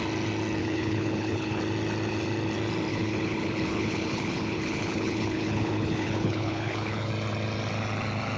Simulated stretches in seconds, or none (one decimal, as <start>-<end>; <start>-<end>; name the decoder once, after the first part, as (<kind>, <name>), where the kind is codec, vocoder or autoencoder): 0.6-1.6 (codec, HILCodec); 2.9-7.1